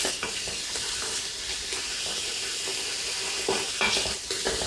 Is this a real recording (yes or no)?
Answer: yes